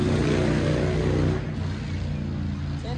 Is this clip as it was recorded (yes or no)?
yes